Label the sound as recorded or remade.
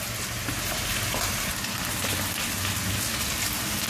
recorded